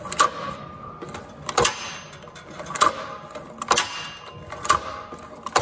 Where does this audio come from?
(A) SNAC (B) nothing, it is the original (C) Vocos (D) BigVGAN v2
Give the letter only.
B